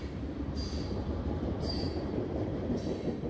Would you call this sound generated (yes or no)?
yes